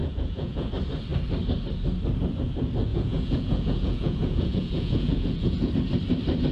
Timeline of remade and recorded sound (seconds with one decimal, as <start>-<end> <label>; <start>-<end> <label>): 0.0-0.7 remade; 0.7-2.9 recorded; 2.9-5.7 remade; 5.7-6.5 recorded